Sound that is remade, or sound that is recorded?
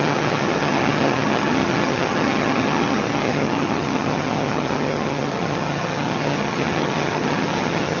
remade